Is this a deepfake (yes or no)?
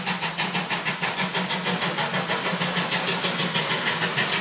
no